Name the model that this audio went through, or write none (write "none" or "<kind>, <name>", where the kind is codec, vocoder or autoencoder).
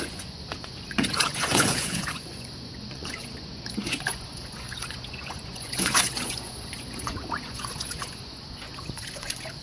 vocoder, Vocos